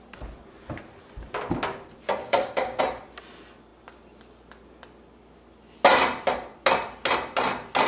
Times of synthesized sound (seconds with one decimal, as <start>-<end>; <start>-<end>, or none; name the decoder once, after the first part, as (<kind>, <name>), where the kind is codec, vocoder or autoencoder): 2.2-2.8 (codec, DAC)